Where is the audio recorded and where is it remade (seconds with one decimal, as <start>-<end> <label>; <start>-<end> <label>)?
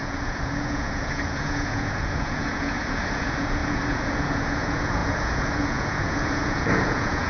0.0-7.3 remade